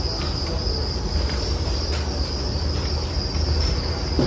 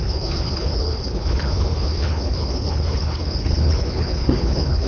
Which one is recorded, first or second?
first